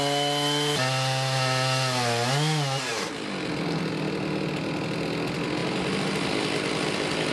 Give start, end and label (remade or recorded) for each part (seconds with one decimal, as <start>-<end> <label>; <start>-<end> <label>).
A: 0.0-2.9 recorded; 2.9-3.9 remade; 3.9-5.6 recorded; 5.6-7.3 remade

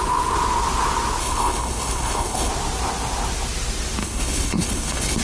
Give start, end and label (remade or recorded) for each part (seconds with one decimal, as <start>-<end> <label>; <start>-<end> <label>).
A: 0.0-1.2 recorded; 1.2-2.5 remade; 2.5-4.0 recorded; 4.0-5.2 remade

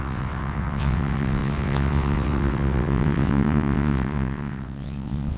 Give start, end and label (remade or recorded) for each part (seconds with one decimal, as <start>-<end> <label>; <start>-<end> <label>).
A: 0.0-5.4 remade

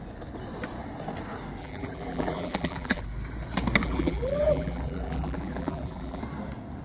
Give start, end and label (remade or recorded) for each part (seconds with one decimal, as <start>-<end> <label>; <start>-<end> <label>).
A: 0.0-1.6 recorded; 1.6-3.0 remade; 3.0-3.8 recorded; 3.8-6.2 remade; 6.2-6.8 recorded

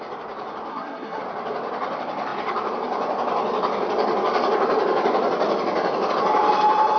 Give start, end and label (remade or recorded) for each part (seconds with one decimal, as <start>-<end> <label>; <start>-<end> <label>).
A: 0.0-0.7 recorded; 0.7-1.2 remade; 1.2-7.0 recorded

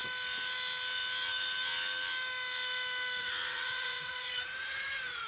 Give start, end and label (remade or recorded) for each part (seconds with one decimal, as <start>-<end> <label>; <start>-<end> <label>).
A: 0.0-3.2 recorded; 3.2-5.3 remade

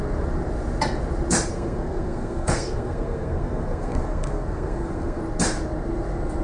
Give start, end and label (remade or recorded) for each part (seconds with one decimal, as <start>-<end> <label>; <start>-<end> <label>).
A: 0.0-1.5 recorded; 1.5-5.2 remade; 5.2-6.4 recorded

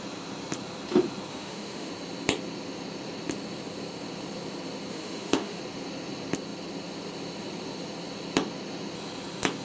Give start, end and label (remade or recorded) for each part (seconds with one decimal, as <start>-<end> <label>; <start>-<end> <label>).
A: 0.0-1.3 recorded; 1.3-1.9 remade; 1.9-4.9 recorded; 4.9-5.6 remade; 5.6-9.6 recorded